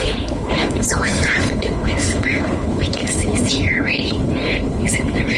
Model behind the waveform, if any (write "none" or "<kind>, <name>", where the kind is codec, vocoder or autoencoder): codec, HILCodec